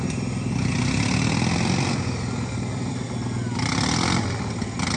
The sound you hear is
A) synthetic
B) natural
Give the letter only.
B